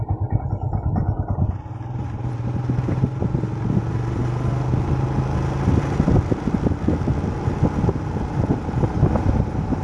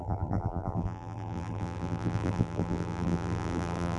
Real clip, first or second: first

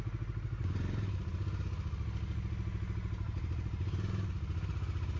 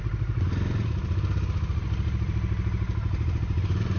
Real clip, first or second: first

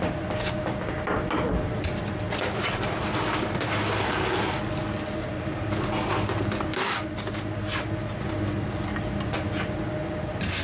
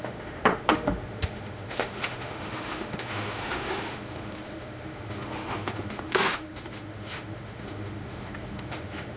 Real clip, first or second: first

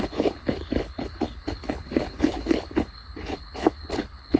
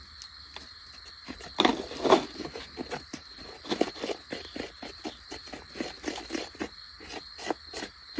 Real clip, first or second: second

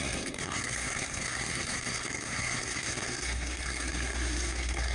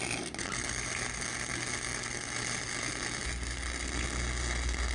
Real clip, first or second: second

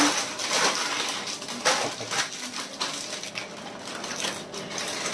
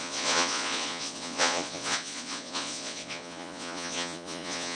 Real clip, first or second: first